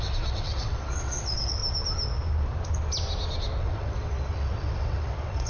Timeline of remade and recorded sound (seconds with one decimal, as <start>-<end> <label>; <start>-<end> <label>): 0.0-1.6 remade; 1.6-3.6 recorded; 3.6-5.5 remade